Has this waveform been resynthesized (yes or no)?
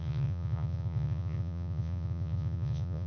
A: yes